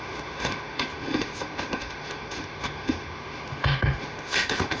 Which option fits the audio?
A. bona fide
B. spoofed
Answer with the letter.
B